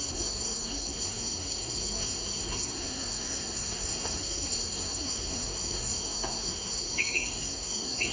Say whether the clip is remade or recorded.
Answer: remade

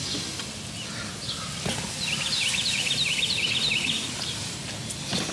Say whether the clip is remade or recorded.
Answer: recorded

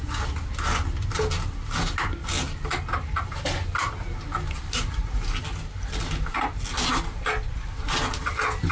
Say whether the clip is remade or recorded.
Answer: recorded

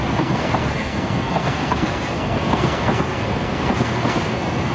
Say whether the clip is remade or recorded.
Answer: remade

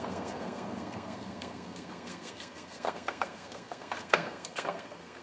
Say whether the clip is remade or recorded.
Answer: remade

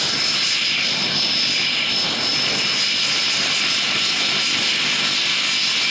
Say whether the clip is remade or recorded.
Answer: recorded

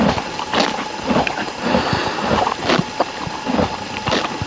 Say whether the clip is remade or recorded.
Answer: recorded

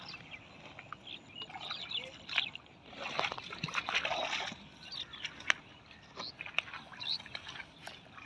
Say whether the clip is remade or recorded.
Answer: recorded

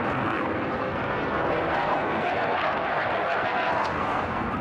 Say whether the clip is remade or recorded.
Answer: remade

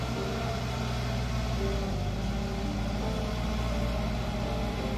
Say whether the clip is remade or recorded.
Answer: recorded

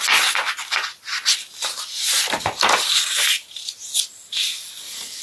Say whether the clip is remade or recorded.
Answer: recorded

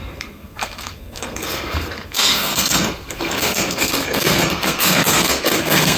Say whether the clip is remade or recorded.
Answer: remade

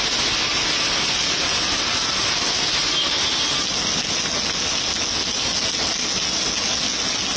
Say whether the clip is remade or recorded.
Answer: recorded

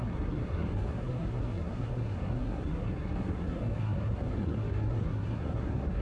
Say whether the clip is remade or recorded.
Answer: remade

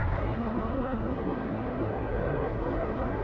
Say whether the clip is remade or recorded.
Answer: remade